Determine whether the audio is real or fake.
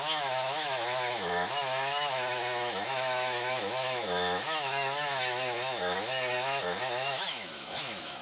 fake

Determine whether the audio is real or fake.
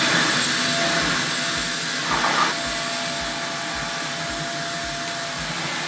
real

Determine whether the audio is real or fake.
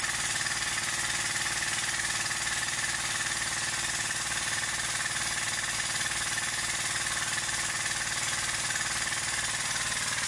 real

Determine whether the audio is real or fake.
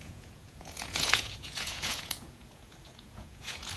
fake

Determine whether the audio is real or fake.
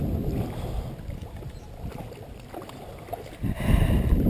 real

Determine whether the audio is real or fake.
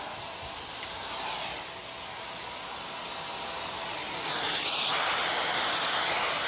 real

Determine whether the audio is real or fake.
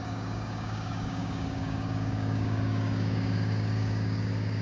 fake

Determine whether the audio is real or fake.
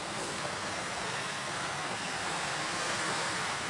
fake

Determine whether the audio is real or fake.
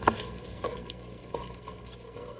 fake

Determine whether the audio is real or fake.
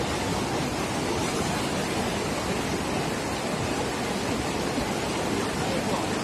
real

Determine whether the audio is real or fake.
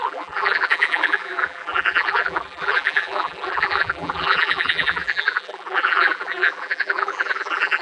fake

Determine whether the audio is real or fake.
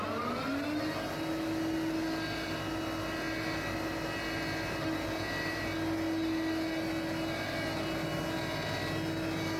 real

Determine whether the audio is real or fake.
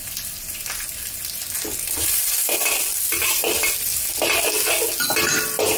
real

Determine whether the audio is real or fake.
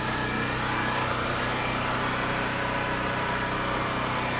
real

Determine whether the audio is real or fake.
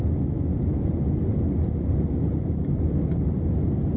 real